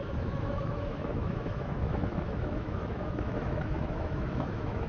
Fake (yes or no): yes